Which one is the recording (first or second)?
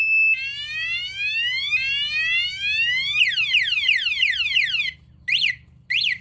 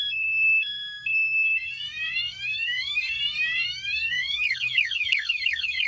first